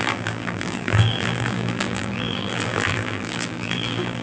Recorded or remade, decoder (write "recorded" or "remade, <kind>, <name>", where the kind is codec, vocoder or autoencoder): remade, vocoder, BigVGAN v2